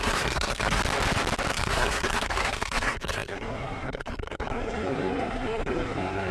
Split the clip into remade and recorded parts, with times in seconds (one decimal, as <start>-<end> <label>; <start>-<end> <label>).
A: 0.0-0.8 remade; 0.8-1.5 recorded; 1.5-6.3 remade